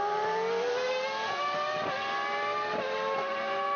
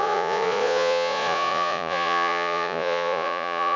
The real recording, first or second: first